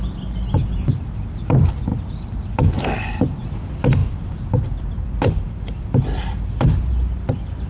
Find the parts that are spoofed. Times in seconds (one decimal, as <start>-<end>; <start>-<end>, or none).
4.0-6.9